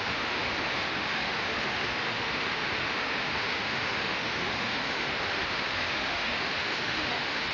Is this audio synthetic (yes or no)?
yes